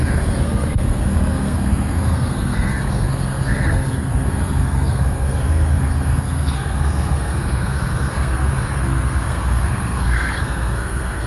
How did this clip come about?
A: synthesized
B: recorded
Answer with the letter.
A